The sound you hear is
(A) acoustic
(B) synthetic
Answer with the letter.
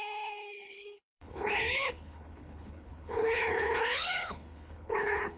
B